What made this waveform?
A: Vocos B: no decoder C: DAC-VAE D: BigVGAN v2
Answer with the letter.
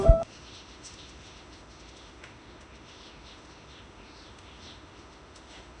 C